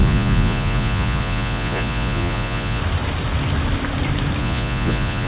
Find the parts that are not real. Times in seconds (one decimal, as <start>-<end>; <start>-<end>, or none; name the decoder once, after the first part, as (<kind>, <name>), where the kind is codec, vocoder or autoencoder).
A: 0.0-2.8 (vocoder, Vocos); 4.4-5.3